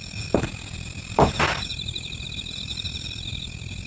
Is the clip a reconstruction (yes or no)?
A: no